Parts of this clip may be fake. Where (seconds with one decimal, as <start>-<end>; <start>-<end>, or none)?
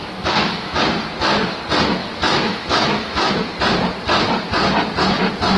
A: 0.0-0.8; 2.0-3.3